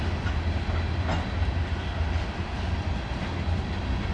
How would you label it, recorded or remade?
recorded